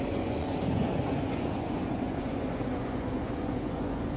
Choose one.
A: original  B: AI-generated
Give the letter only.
B